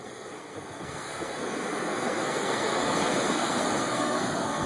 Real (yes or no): no